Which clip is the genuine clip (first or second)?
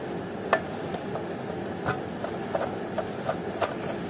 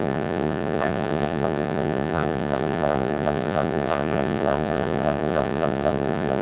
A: first